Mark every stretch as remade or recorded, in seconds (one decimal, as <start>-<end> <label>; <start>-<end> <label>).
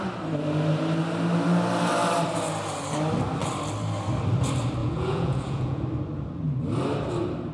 0.0-4.8 recorded; 4.8-5.8 remade; 5.8-7.5 recorded